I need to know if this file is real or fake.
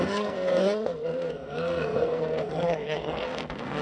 fake